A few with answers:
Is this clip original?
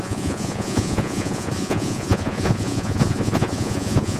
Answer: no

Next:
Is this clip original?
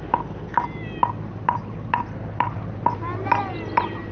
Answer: yes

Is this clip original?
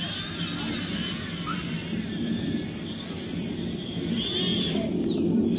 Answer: yes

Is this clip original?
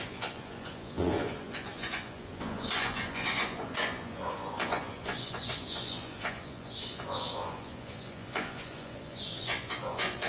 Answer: no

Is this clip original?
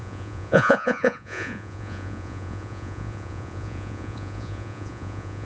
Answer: no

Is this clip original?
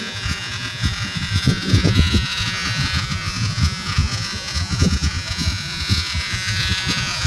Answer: no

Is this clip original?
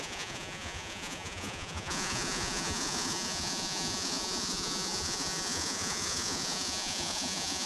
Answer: no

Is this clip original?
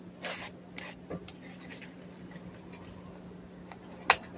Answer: yes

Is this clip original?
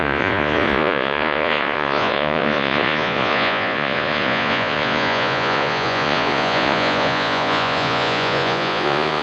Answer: no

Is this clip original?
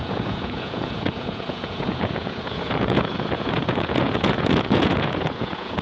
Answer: no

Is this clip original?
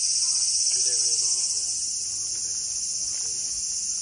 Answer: yes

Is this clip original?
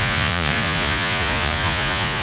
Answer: no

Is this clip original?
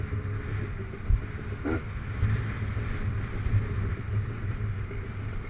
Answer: yes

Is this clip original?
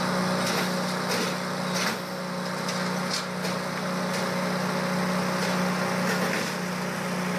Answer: yes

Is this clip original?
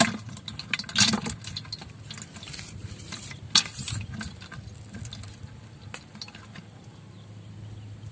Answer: yes